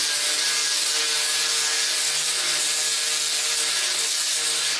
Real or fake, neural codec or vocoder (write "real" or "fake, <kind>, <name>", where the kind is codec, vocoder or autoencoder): real